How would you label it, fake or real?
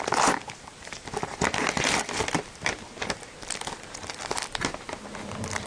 real